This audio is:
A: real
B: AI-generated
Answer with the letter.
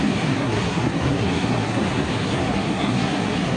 B